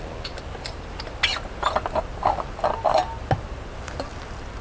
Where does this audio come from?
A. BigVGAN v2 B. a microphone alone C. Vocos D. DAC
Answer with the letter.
B